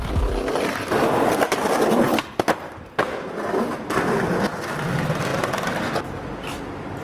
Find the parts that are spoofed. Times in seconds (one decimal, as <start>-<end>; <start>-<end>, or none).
1.6-2.7